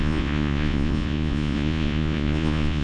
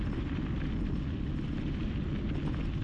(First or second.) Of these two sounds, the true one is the second